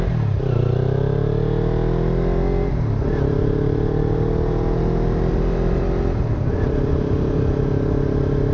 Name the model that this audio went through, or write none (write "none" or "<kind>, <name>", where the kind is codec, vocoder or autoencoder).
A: none